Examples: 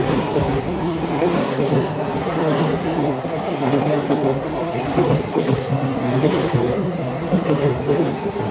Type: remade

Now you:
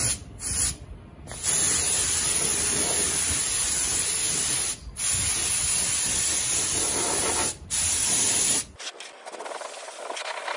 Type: recorded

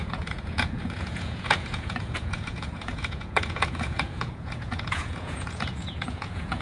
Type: remade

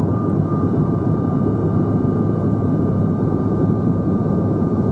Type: remade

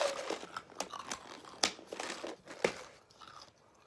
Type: recorded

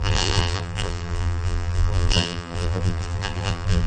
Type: remade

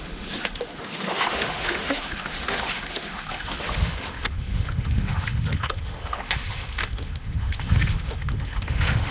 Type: remade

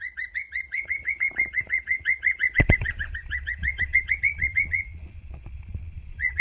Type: remade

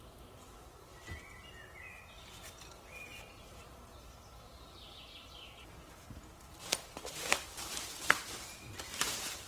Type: recorded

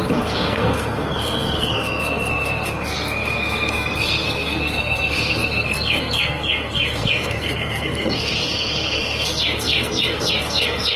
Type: remade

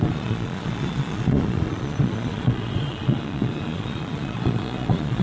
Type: remade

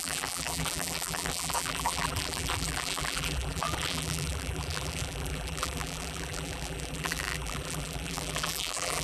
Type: remade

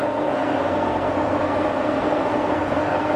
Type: remade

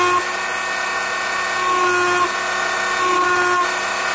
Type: recorded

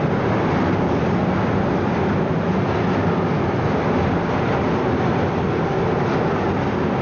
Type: recorded